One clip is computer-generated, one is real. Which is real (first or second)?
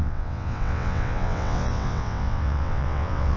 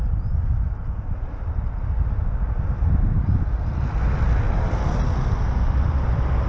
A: second